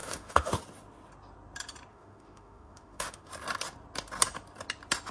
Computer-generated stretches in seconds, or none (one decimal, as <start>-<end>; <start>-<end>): 0.0-0.6; 1.9-3.3